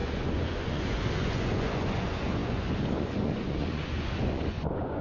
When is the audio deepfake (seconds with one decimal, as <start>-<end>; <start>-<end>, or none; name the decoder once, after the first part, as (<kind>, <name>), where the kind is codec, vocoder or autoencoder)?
0.0-5.0 (vocoder, Vocos)